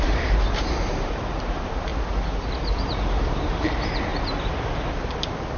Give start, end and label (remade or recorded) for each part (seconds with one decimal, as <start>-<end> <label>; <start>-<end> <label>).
0.0-1.9 remade; 1.9-3.3 recorded; 3.3-4.1 remade; 4.1-5.6 recorded